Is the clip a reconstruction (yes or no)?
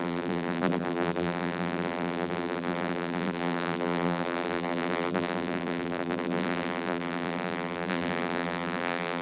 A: yes